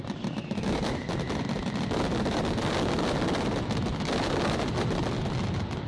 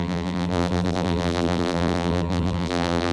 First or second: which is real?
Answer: first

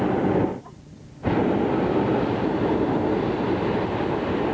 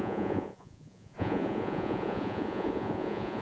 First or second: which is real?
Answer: first